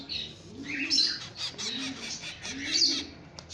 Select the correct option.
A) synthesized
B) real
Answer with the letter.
B